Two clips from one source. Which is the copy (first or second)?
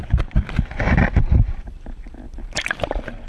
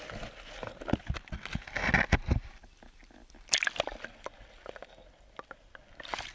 first